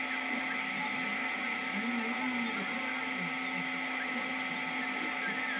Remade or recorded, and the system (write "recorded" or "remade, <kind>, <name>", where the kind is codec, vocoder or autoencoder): recorded